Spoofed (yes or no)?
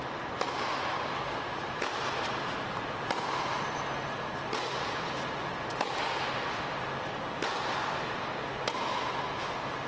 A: no